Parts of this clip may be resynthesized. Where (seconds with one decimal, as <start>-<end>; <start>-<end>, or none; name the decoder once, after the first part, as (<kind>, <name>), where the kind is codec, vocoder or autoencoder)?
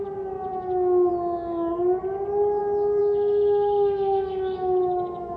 0.5-1.1 (autoencoder, DAC-VAE); 3.0-5.4